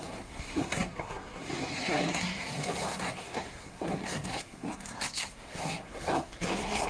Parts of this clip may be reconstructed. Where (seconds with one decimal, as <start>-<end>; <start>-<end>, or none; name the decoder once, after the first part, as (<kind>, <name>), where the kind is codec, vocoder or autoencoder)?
0.0-6.9 (codec, SNAC)